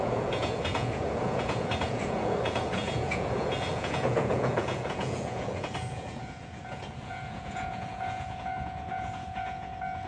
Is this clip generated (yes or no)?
yes